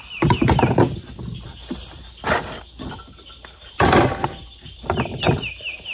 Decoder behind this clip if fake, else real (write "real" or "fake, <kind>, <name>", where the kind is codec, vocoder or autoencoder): real